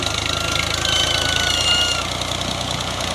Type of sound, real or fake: real